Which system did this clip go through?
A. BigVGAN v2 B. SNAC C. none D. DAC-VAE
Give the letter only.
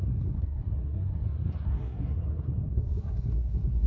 B